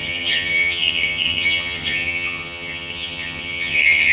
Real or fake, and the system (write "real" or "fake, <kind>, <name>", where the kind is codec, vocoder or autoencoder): fake, vocoder, HiFi-GAN